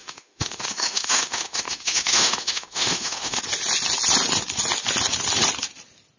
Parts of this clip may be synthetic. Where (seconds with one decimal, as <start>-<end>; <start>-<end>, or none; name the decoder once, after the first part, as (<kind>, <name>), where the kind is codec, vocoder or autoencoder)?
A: 0.0-3.4 (autoencoder, DAC-VAE)